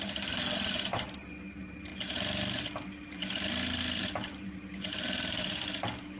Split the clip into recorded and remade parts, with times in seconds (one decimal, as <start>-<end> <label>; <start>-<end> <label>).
0.0-6.2 recorded